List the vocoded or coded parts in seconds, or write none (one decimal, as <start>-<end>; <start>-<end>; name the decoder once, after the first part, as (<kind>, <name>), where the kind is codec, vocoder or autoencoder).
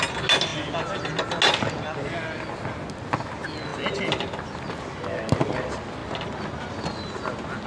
none